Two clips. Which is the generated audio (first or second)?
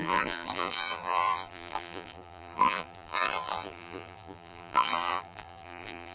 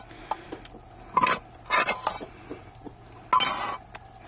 first